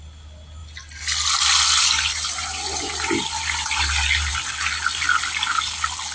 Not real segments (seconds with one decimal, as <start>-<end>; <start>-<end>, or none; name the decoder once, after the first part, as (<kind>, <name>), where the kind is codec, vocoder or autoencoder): 0.6-4.3 (vocoder, BigVGAN v2)